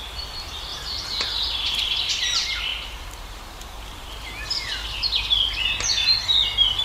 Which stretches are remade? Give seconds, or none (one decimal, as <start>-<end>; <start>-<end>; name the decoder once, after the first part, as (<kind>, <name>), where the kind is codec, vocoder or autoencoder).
0.7-2.1 (vocoder, BigVGAN v2); 2.7-4.1